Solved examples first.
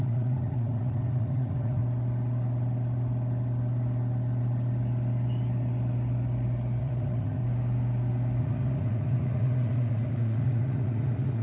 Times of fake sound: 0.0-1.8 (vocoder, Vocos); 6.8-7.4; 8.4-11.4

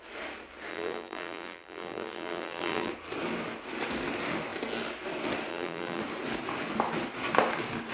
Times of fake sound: 0.7-2.9 (vocoder, BigVGAN v2); 5.5-6.0

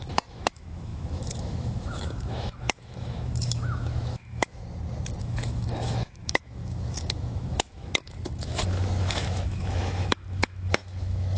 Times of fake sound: 0.0-4.6 (autoencoder, DAC-VAE); 5.2-11.4

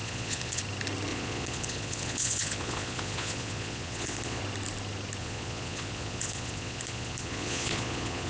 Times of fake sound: 0.0-0.6 (vocoder, Vocos); 1.1-4.4; 5.2-8.3

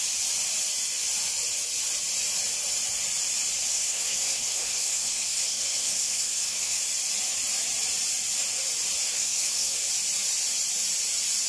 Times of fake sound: 3.7-6.8 (codec, SNAC); 9.1-9.9

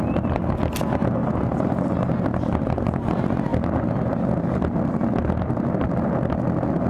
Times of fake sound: none

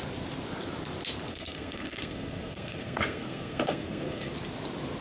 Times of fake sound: 1.3-4.3 (codec, SNAC)